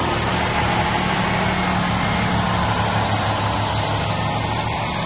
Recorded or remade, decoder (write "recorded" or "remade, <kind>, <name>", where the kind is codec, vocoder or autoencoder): recorded